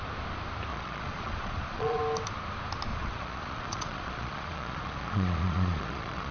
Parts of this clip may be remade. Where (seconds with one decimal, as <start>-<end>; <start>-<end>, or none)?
0.7-2.0; 2.9-6.3